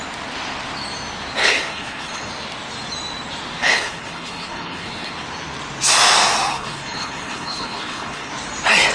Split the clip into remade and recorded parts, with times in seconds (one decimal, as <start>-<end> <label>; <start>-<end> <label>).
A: 0.0-1.4 recorded; 1.4-2.3 remade; 2.3-3.6 recorded; 3.6-5.1 remade; 5.1-6.5 recorded; 6.5-8.3 remade; 8.3-8.9 recorded